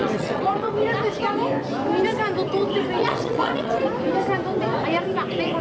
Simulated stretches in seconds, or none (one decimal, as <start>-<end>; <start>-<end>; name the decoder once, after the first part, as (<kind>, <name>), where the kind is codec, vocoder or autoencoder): 0.0-0.7 (vocoder, WaveNeXt); 3.0-3.8